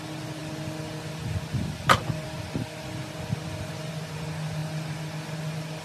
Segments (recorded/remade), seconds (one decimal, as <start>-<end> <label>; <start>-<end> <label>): 0.0-5.8 recorded